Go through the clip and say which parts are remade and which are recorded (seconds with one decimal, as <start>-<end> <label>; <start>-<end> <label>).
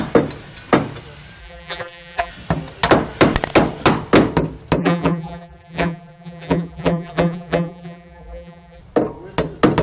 0.0-1.4 recorded; 1.4-2.3 remade; 2.3-4.8 recorded; 4.8-8.8 remade; 8.8-9.8 recorded